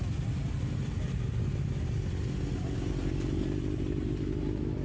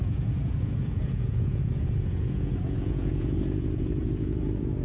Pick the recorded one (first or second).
first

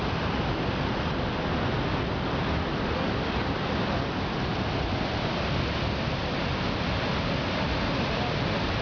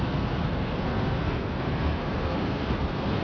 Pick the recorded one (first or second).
first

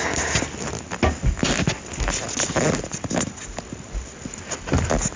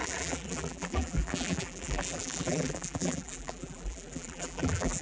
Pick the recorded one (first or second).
first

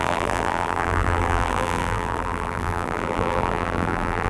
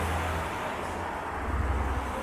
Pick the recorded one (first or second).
second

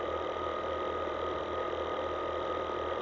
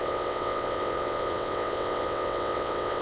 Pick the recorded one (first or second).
first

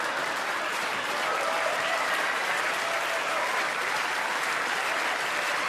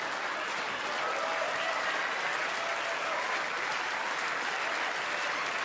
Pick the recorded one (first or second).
second